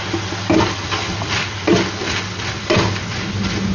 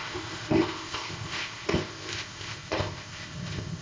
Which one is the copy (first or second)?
second